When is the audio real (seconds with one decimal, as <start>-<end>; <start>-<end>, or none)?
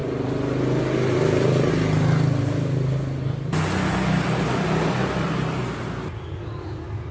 0.0-7.1